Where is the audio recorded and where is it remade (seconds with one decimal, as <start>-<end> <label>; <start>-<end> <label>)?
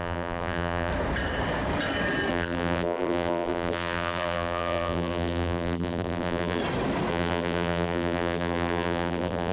0.0-0.9 remade; 0.9-2.3 recorded; 2.3-6.6 remade; 6.6-7.1 recorded; 7.1-9.5 remade